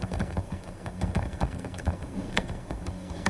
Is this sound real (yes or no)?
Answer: no